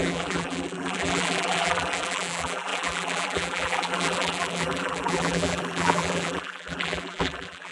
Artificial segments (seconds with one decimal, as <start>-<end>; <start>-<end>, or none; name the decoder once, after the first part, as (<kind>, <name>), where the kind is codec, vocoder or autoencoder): 0.0-7.7 (vocoder, BigVGAN v2)

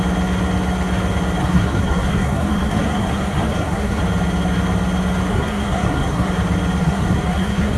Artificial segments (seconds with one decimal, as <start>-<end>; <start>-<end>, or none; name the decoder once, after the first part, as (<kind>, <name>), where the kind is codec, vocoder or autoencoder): 1.4-4.0 (codec, SNAC); 5.3-6.3; 6.8-7.8

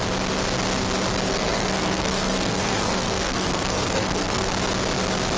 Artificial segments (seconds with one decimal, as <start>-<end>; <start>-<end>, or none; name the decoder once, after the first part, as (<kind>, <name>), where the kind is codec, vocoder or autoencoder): 1.3-4.5 (codec, SNAC)

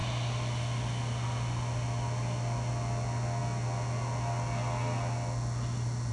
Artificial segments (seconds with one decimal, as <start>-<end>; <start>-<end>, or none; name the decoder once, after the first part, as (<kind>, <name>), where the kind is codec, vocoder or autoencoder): none

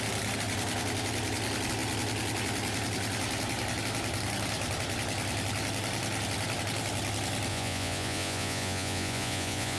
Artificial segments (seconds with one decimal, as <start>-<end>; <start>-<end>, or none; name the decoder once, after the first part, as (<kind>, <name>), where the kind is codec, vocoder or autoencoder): 7.5-9.8 (vocoder, Vocos)

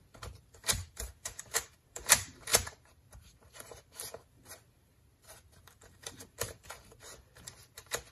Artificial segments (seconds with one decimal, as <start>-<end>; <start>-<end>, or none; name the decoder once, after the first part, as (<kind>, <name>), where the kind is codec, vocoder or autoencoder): 0.0-8.1 (vocoder, BigVGAN v2)

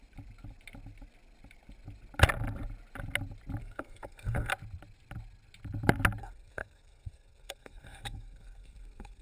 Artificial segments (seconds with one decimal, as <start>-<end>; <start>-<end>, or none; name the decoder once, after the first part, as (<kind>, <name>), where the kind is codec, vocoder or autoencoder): 3.6-4.5 (codec, SNAC); 6.2-9.2

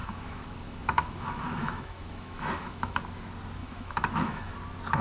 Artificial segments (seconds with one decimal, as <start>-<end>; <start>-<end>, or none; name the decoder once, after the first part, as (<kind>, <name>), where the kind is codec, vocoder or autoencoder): 0.0-3.0 (autoencoder, DAC-VAE); 3.6-4.5